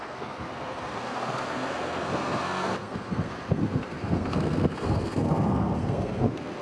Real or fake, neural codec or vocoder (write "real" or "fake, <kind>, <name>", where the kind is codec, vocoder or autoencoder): fake, codec, SNAC